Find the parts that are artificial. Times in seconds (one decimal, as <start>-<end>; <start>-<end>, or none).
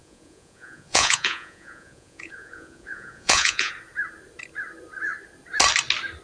0.0-3.7